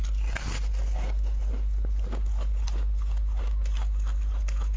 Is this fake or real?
real